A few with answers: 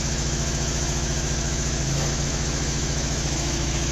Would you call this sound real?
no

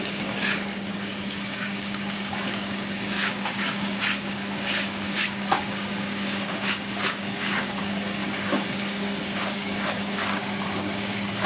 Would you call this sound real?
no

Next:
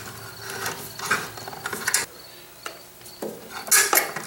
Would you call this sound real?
yes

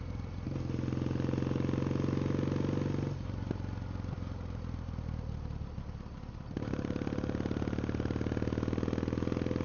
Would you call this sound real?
yes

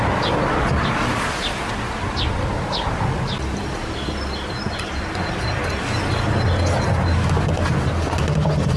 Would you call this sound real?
yes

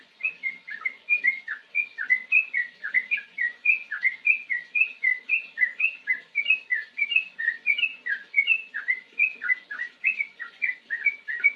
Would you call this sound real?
no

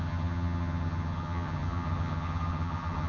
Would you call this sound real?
no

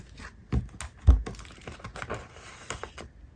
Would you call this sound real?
yes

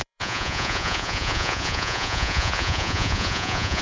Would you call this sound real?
no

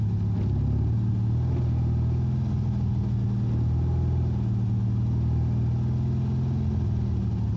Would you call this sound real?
yes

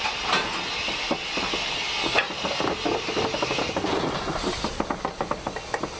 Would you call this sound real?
yes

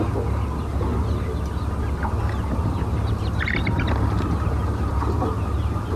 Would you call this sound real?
yes